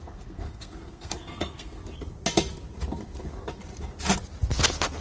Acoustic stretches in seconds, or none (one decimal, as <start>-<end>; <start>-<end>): 1.8-5.0